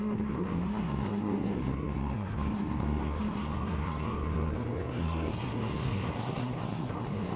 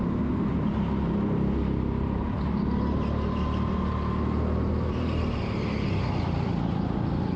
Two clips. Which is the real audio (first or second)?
second